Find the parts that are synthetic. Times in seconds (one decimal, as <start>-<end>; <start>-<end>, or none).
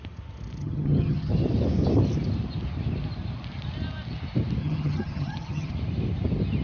0.6-1.3; 4.6-5.7